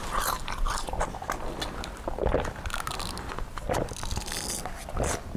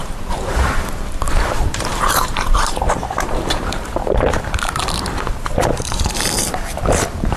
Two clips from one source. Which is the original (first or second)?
first